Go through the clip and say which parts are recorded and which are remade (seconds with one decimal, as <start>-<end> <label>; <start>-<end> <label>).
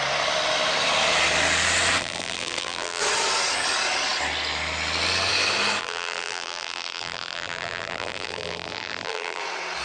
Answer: 0.0-2.0 recorded; 2.0-3.0 remade; 3.0-5.8 recorded; 5.8-9.4 remade; 9.4-9.8 recorded